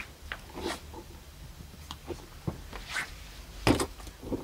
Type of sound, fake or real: real